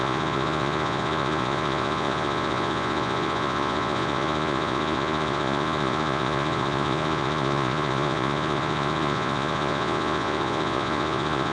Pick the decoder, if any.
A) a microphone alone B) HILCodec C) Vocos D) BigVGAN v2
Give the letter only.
C